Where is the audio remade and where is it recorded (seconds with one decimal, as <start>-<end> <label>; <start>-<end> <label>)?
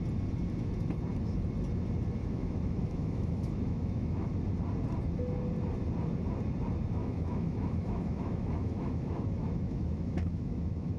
0.0-2.2 recorded; 2.2-4.3 remade; 4.3-7.0 recorded; 7.0-11.0 remade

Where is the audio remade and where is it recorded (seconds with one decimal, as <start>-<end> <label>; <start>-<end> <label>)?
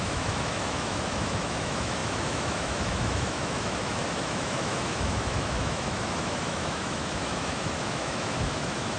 0.0-9.0 remade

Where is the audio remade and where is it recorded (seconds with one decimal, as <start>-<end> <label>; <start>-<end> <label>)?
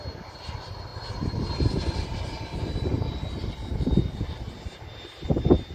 0.0-5.7 recorded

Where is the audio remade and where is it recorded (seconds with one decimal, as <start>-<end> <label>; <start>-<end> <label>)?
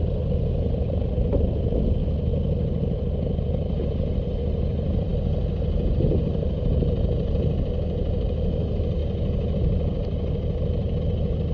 0.0-11.5 recorded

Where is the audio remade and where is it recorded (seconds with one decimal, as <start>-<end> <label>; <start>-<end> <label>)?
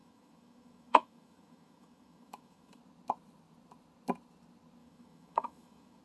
0.0-2.8 remade; 2.8-4.8 recorded; 4.8-6.0 remade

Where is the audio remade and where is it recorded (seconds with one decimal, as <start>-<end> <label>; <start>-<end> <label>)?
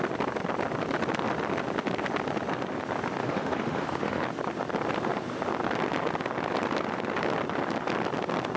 0.0-3.2 recorded; 3.2-4.2 remade; 4.2-8.6 recorded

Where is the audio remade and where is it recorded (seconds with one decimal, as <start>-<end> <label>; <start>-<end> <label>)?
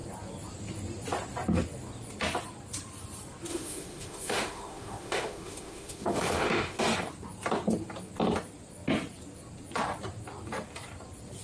0.0-3.5 recorded; 3.5-6.8 remade; 6.8-11.4 recorded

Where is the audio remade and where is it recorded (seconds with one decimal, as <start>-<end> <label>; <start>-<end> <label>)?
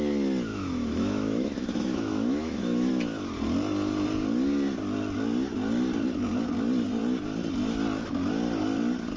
0.0-0.5 recorded; 0.5-2.9 remade; 2.9-9.2 recorded